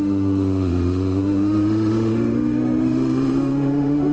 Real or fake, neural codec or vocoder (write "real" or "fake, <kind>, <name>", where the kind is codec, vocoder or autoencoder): fake, autoencoder, DAC-VAE